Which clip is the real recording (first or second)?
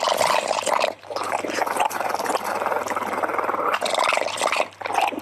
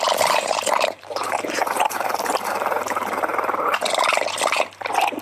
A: first